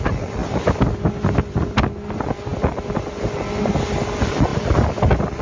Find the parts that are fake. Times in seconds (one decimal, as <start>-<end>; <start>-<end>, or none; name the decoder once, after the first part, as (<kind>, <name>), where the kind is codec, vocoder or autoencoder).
none